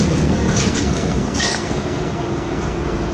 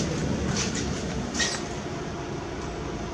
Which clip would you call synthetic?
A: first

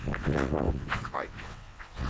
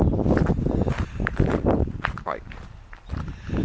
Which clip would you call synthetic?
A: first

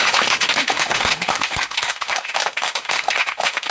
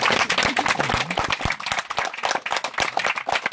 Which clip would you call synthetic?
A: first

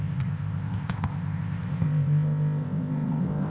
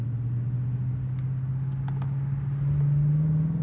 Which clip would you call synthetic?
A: first